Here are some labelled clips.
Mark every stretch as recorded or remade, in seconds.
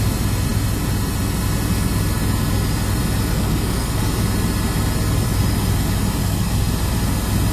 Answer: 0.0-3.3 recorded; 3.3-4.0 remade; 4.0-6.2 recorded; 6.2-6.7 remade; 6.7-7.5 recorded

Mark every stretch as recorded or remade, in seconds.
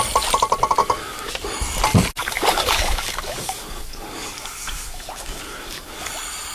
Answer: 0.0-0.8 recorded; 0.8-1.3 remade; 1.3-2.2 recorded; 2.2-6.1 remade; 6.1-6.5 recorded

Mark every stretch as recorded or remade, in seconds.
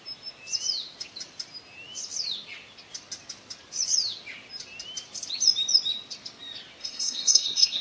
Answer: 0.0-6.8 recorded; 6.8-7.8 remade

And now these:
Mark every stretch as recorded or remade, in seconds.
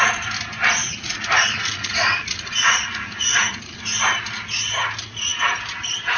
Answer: 0.0-0.8 recorded; 0.8-3.8 remade; 3.8-6.2 recorded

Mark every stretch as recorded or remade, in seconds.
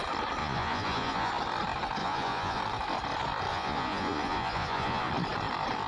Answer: 0.0-0.4 recorded; 0.4-1.3 remade; 1.3-2.0 recorded; 2.0-2.6 remade; 2.6-3.5 recorded; 3.5-5.1 remade; 5.1-5.9 recorded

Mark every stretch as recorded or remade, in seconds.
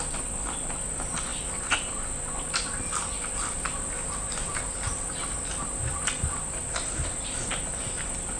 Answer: 0.0-1.3 recorded; 1.3-2.9 remade; 2.9-6.6 recorded; 6.6-8.4 remade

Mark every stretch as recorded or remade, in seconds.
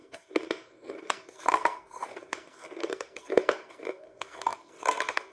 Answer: 0.0-5.3 remade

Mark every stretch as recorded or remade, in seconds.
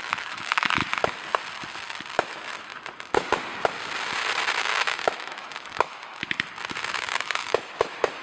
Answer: 0.0-0.8 remade; 0.8-2.3 recorded; 2.3-2.7 remade; 2.7-4.6 recorded; 4.6-6.2 remade; 6.2-6.9 recorded; 6.9-8.2 remade